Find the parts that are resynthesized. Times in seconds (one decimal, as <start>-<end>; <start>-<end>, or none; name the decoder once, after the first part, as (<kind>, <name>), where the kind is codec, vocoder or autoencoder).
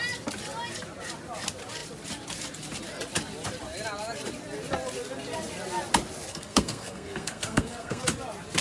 6.3-8.0 (codec, SNAC)